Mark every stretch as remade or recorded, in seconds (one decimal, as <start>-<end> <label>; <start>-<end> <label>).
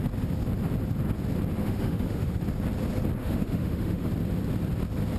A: 0.0-1.6 recorded; 1.6-2.4 remade; 2.4-3.2 recorded; 3.2-4.1 remade; 4.1-5.2 recorded